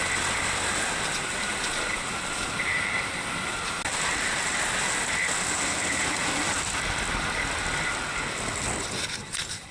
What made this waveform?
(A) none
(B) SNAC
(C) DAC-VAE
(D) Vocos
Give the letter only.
A